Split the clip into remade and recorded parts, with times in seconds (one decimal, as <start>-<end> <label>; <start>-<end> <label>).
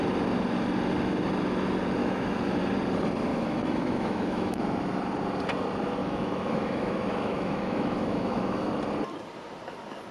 0.0-2.0 recorded; 2.0-2.6 remade; 2.6-3.3 recorded; 3.3-4.6 remade; 4.6-6.0 recorded; 6.0-8.7 remade; 8.7-10.1 recorded